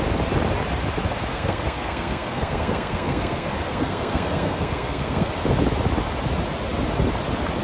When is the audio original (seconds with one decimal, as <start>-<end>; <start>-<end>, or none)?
0.0-1.3; 5.3-7.6